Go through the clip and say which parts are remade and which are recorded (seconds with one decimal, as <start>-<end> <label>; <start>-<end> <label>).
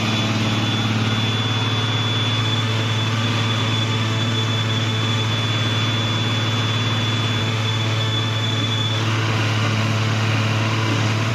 0.0-2.4 recorded; 2.4-5.3 remade; 5.3-7.4 recorded; 7.4-11.3 remade